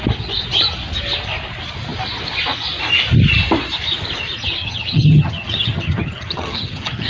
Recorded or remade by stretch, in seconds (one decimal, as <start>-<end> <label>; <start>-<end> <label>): 0.0-4.6 recorded; 4.6-7.1 remade